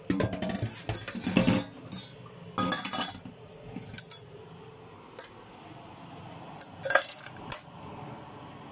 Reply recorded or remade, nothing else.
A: recorded